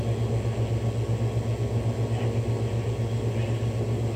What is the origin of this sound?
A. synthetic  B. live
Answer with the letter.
B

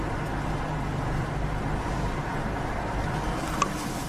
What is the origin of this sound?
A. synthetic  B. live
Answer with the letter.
B